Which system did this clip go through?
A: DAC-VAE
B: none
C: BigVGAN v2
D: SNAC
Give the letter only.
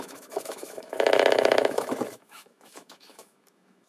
A